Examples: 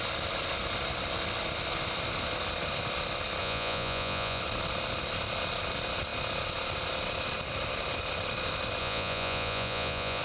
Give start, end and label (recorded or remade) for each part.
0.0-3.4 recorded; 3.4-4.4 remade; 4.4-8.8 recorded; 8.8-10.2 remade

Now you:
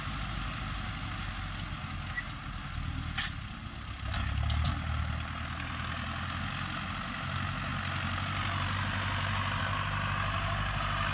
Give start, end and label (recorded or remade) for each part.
0.0-11.1 recorded

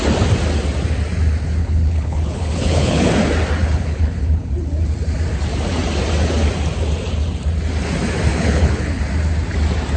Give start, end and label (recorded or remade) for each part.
0.0-1.6 recorded; 1.6-3.0 remade; 3.0-3.6 recorded; 3.6-4.5 remade; 4.5-8.3 recorded; 8.3-9.0 remade; 9.0-10.0 recorded